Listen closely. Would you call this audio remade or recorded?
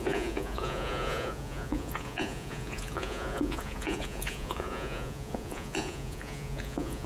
remade